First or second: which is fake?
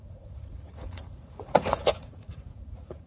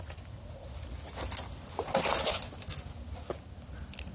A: first